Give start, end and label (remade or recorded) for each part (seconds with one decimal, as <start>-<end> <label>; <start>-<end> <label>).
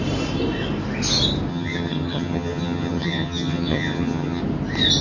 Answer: 0.0-1.5 recorded; 1.5-4.4 remade; 4.4-5.0 recorded